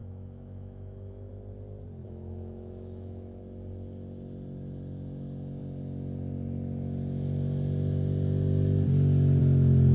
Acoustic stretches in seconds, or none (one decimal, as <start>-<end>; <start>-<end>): 1.3-2.0; 3.4-9.9